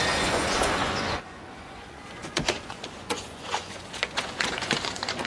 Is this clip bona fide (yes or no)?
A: no